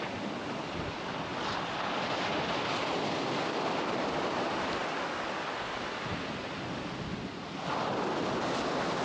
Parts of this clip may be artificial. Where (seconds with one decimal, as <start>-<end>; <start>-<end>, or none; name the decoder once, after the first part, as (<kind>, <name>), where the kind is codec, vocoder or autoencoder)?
none